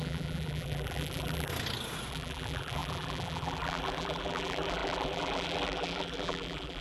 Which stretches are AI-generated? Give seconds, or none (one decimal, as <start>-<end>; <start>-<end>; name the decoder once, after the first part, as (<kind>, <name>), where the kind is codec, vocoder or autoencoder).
0.0-1.5 (vocoder, BigVGAN v2); 2.1-6.8